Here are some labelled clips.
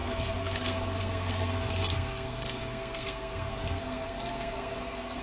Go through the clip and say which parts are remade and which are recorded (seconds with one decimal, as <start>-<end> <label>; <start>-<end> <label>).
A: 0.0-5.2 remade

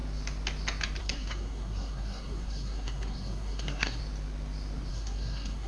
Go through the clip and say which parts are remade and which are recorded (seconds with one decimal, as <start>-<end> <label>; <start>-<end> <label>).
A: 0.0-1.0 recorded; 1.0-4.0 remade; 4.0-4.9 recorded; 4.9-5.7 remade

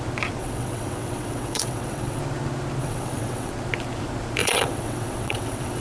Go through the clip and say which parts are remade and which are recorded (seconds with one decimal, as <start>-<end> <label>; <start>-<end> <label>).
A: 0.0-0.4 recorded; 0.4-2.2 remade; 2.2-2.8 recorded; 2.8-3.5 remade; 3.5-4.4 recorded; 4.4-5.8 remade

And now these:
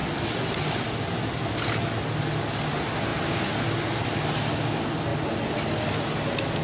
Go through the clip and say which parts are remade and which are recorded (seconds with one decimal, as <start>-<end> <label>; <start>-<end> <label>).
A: 0.0-6.6 recorded

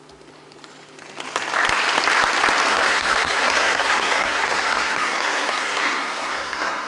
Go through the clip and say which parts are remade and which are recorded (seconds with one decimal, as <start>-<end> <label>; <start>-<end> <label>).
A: 0.0-2.7 recorded; 2.7-6.9 remade

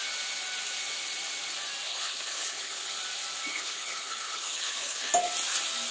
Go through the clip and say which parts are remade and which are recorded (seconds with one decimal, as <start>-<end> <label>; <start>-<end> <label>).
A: 0.0-1.9 recorded; 1.9-2.9 remade; 2.9-3.5 recorded; 3.5-5.1 remade; 5.1-5.9 recorded

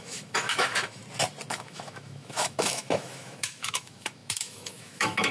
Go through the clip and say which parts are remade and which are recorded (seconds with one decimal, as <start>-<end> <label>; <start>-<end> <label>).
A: 0.0-1.0 remade; 1.0-1.5 recorded; 1.5-5.3 remade